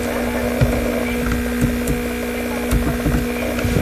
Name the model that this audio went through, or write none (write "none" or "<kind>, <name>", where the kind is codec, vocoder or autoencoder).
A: none